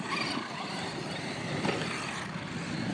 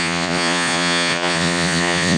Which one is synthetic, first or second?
second